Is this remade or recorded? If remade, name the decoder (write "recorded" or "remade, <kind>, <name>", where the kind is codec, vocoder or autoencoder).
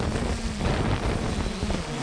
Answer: recorded